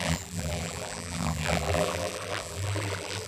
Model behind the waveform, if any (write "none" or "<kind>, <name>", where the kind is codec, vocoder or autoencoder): vocoder, BigVGAN v2